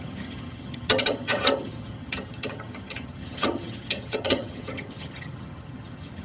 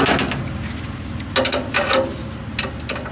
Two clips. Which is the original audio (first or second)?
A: second